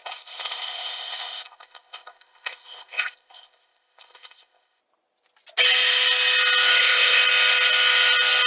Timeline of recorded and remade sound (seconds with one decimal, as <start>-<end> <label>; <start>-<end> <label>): 0.0-4.8 remade; 4.8-6.8 recorded; 6.8-7.2 remade; 7.2-8.5 recorded